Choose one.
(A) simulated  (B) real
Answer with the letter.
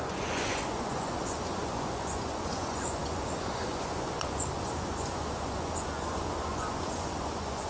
A